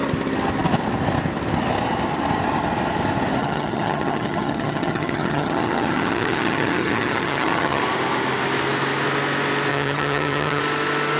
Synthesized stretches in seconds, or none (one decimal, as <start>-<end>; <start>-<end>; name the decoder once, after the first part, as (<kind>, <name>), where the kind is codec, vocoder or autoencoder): 3.4-7.8 (vocoder, HiFi-GAN); 9.7-10.6